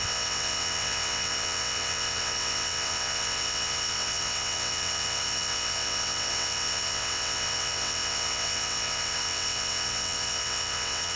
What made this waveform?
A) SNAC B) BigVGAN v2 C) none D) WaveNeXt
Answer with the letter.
D